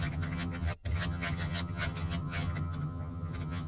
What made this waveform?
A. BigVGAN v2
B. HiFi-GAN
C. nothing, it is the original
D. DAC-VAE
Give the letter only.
B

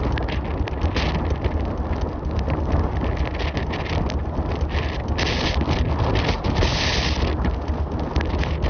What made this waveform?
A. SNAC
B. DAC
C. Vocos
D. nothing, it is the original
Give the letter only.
D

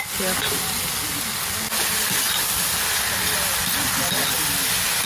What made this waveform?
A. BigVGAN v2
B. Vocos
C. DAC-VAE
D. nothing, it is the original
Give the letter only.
D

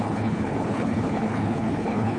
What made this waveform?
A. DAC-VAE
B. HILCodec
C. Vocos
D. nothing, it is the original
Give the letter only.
B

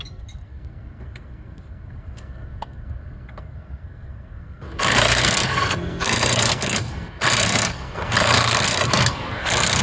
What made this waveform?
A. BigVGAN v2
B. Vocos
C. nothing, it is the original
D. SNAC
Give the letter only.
D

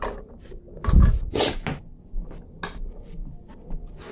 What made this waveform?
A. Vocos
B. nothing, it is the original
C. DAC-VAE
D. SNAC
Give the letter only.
B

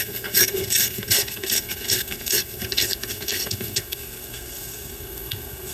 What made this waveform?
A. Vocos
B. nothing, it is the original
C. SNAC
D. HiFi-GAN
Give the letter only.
C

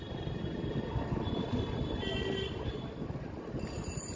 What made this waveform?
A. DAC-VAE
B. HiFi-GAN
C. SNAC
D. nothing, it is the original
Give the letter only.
D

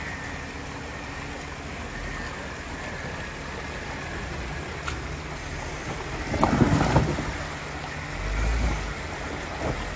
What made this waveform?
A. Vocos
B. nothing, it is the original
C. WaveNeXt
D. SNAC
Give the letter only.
B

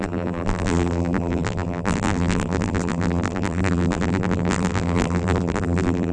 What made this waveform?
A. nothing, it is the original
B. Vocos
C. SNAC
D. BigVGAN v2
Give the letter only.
D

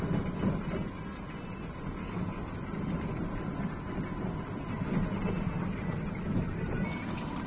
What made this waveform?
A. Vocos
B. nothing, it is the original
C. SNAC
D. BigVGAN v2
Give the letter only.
B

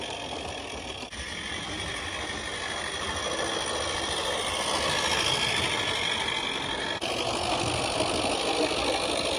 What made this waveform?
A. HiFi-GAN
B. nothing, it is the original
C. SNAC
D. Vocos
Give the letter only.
B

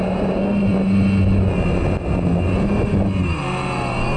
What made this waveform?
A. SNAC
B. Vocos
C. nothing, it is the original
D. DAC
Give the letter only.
C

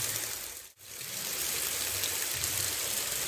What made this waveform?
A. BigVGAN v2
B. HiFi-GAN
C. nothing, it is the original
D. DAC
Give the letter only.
C